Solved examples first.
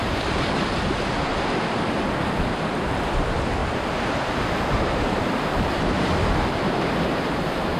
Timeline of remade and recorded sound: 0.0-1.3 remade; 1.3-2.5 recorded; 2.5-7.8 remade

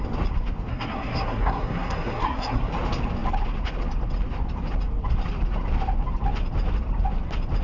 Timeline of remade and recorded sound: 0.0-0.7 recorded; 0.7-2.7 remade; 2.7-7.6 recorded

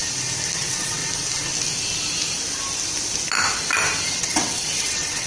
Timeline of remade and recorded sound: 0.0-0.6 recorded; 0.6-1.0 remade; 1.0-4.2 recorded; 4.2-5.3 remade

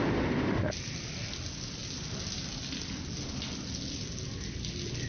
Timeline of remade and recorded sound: 0.0-5.1 recorded

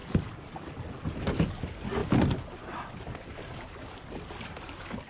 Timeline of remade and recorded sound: 0.0-5.1 recorded

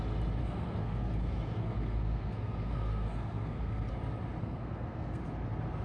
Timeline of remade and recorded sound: 0.0-0.4 recorded; 0.4-3.9 remade; 3.9-4.4 recorded; 4.4-5.2 remade; 5.2-5.8 recorded

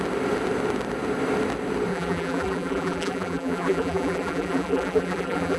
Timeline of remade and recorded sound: 0.0-1.9 recorded; 1.9-5.6 remade

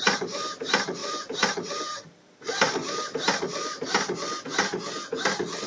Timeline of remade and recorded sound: 0.0-1.0 recorded; 1.0-4.4 remade; 4.4-5.7 recorded